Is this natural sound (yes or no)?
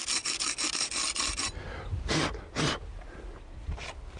yes